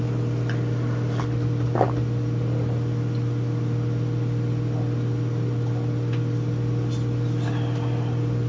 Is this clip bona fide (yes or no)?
yes